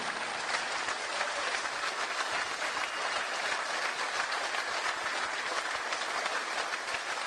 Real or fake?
real